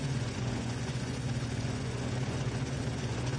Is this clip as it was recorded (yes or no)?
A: no